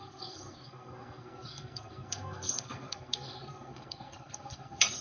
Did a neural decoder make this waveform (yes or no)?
yes